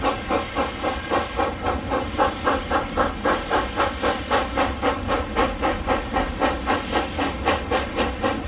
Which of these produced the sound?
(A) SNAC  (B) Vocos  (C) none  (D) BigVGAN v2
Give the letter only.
C